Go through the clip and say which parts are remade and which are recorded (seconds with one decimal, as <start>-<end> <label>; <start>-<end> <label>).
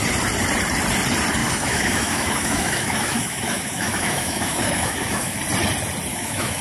0.0-1.4 recorded; 1.4-5.4 remade; 5.4-6.1 recorded; 6.1-6.6 remade